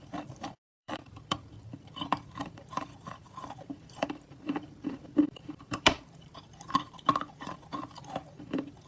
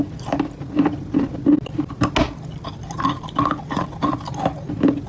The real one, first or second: second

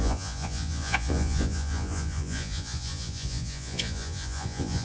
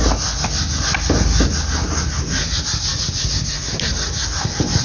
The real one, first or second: second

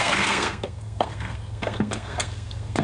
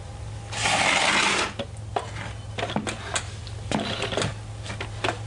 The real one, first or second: second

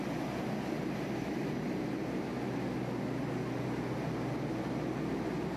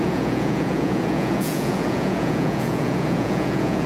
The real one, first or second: first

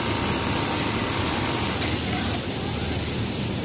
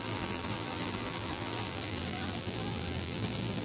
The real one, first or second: first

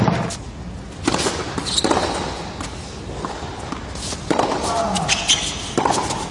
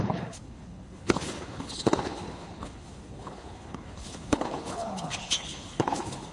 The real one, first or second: first